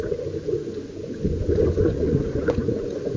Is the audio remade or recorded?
remade